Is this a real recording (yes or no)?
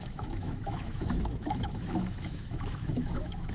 no